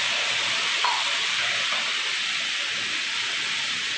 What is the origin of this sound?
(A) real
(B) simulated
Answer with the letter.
A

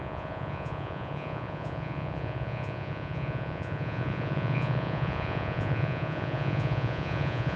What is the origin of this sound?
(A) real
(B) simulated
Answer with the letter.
B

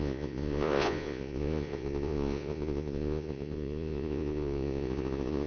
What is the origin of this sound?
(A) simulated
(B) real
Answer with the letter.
A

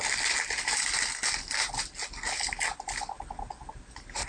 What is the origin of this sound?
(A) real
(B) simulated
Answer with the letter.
A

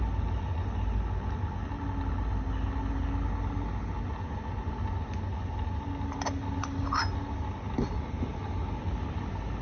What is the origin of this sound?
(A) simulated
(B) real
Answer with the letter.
B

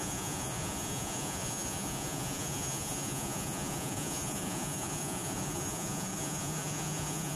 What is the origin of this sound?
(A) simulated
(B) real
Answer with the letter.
A